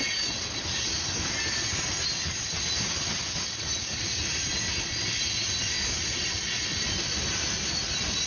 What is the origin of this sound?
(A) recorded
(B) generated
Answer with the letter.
A